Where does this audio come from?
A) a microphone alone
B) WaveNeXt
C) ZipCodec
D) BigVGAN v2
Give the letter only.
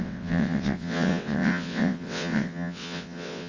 B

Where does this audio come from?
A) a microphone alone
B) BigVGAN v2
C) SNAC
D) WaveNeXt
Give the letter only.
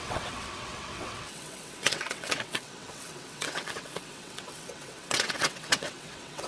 D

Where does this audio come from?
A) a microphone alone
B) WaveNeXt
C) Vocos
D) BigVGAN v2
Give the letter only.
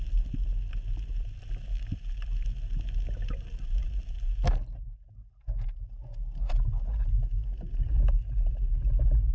A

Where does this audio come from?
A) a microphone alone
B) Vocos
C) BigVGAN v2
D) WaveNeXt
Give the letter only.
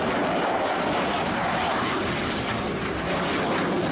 A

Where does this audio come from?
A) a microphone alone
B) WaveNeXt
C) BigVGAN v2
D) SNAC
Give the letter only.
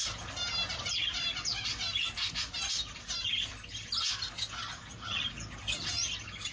A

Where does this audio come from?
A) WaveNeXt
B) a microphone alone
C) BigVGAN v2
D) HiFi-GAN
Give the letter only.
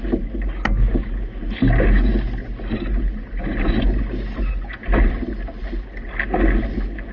B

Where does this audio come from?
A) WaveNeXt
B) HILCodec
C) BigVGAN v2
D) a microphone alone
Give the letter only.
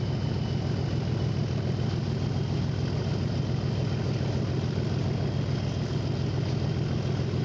D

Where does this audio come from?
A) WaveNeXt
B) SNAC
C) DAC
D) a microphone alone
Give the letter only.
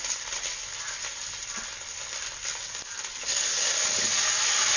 D